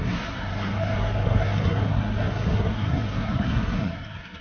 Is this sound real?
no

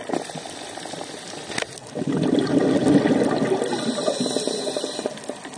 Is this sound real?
yes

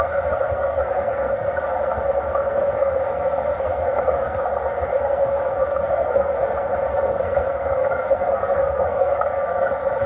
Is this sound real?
no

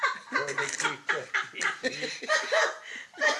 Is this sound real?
yes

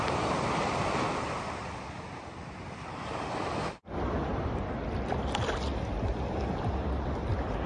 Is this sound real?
yes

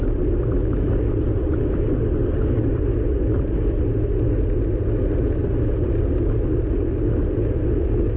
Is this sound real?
yes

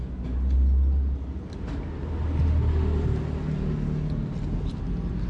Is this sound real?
yes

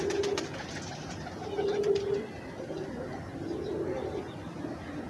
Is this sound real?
yes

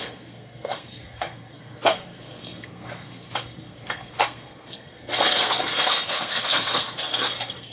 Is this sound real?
no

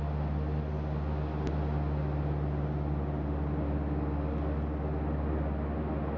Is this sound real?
yes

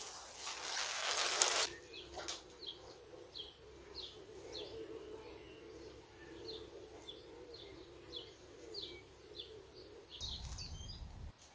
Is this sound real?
yes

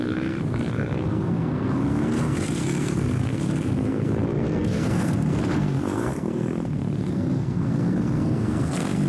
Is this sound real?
no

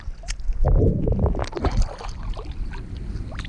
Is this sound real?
yes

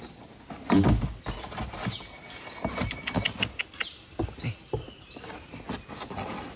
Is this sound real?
yes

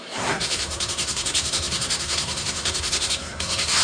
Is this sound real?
no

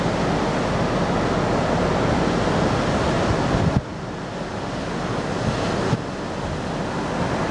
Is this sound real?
yes